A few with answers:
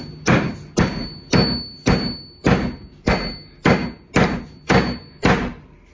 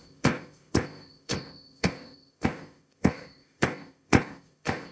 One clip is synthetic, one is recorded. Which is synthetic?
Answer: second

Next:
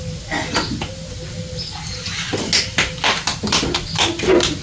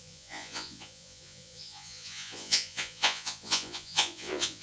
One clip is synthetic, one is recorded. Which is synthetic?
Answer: second